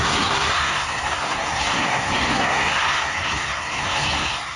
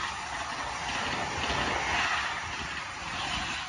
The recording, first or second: second